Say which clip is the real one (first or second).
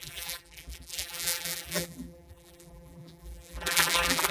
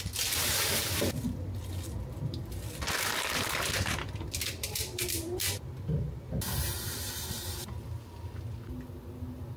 second